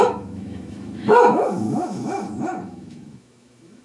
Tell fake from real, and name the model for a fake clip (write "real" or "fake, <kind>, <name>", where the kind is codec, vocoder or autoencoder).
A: fake, autoencoder, DAC-VAE